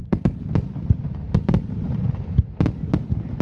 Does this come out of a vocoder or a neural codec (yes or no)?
no